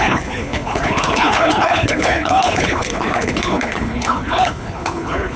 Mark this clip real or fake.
fake